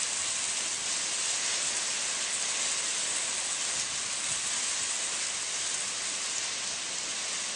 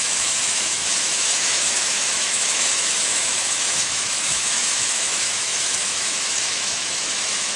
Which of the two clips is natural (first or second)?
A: first